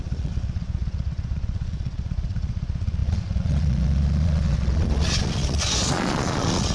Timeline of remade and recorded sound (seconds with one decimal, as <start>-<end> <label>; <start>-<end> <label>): 0.0-6.7 remade